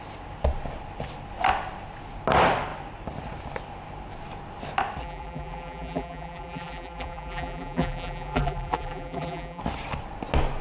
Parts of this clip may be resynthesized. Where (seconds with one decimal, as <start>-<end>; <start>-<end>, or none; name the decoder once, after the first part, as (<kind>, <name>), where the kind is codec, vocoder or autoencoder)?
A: 5.0-9.6 (vocoder, BigVGAN v2)